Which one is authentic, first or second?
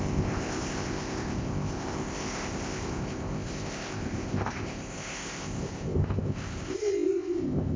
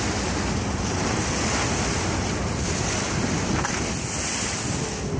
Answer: second